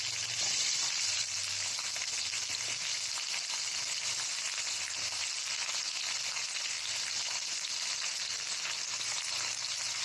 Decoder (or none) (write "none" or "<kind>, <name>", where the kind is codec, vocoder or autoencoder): none